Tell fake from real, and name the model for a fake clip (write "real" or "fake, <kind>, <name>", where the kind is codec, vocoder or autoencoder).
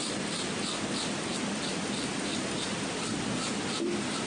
fake, vocoder, BigVGAN v2